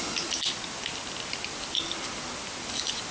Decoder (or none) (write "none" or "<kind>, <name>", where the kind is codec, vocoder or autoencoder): none